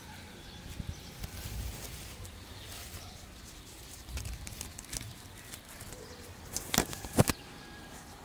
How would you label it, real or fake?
fake